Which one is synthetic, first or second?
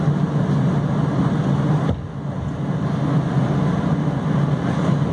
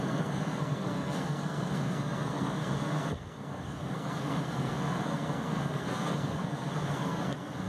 second